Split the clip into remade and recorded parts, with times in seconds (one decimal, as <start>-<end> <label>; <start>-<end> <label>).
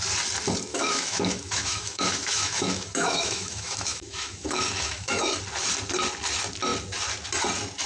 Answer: 0.0-0.7 recorded; 0.7-5.4 remade; 5.4-7.9 recorded